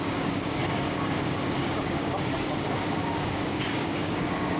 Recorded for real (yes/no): no